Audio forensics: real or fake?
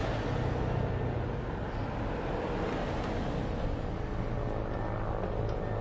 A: real